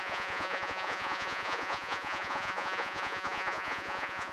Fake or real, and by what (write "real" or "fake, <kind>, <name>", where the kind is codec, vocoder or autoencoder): fake, vocoder, Vocos